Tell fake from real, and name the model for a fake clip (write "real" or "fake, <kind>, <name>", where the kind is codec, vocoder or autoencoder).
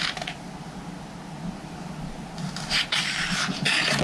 real